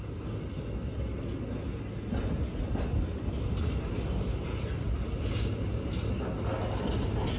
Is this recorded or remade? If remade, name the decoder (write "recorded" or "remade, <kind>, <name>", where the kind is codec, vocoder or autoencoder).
recorded